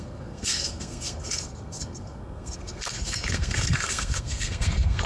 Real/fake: fake